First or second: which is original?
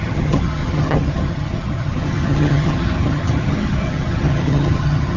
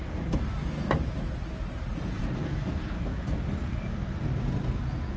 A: second